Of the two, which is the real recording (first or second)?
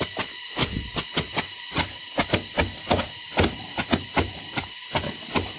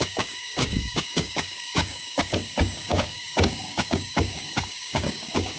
first